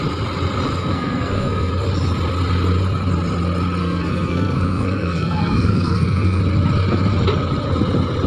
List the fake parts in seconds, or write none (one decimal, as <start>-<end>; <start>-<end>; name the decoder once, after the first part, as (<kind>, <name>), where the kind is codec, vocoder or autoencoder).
0.8-1.7 (codec, SNAC); 3.8-6.4